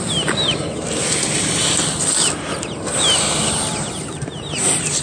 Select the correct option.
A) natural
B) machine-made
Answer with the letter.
A